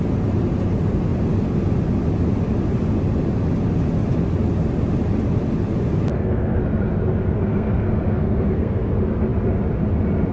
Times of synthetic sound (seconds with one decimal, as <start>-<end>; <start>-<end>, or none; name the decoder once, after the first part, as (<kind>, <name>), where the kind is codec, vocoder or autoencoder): 6.1-6.6 (codec, SNAC); 7.2-8.9